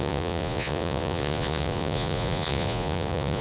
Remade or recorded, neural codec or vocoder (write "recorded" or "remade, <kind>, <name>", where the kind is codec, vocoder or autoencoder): remade, vocoder, Vocos